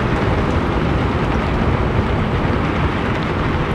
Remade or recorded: recorded